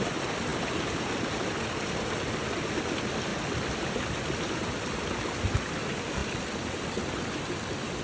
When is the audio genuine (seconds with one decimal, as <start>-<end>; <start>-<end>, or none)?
0.0-8.0